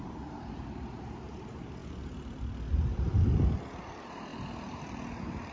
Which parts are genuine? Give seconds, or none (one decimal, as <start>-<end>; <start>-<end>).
1.8-3.8; 4.3-5.5